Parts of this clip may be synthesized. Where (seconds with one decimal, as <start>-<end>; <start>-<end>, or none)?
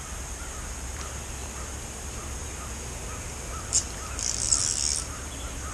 none